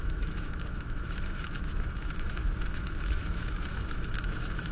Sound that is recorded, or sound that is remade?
remade